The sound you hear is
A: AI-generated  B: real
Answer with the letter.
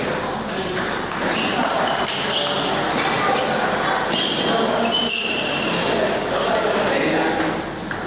B